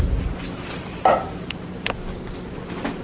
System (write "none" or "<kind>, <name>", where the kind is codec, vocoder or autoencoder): none